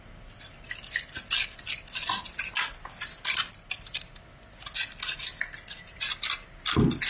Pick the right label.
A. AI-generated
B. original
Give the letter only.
B